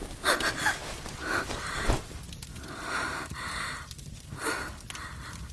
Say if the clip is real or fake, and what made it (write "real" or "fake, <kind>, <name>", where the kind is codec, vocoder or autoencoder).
real